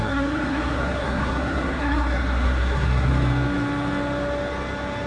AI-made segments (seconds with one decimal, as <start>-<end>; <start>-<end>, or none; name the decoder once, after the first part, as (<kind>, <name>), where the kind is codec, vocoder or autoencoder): 0.0-3.1 (codec, SNAC)